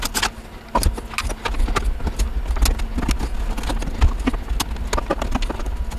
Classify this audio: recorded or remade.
recorded